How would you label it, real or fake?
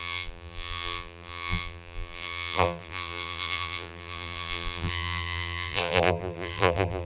fake